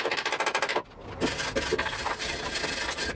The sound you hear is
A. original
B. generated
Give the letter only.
A